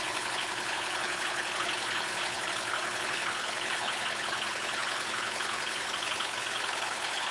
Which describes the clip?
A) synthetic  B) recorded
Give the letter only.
A